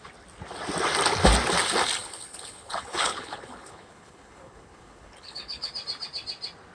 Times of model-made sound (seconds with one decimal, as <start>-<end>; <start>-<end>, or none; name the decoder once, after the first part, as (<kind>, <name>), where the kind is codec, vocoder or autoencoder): 2.0-5.7 (codec, HILCodec)